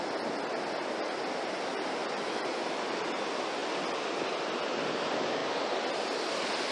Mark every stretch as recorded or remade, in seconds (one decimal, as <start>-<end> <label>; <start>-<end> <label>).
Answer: 0.0-2.0 recorded; 2.0-3.1 remade; 3.1-3.6 recorded; 3.6-4.8 remade; 4.8-6.7 recorded

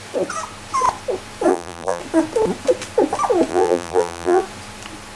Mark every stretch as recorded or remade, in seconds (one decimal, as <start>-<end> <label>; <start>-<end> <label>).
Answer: 0.0-1.5 recorded; 1.5-2.0 remade; 2.0-3.5 recorded; 3.5-4.4 remade; 4.4-5.2 recorded

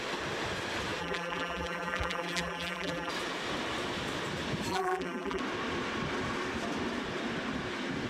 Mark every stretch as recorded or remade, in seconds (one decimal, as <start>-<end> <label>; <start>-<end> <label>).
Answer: 0.0-1.0 recorded; 1.0-3.1 remade; 3.1-4.7 recorded; 4.7-5.4 remade; 5.4-8.1 recorded

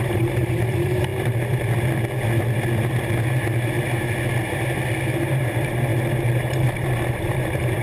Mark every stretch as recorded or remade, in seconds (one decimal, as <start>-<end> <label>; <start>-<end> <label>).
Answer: 0.0-1.1 remade; 1.1-5.2 recorded; 5.2-7.8 remade

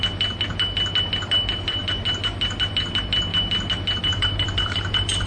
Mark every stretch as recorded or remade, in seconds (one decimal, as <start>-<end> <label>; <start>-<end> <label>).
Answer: 0.0-1.8 recorded; 1.8-2.7 remade; 2.7-3.3 recorded; 3.3-5.3 remade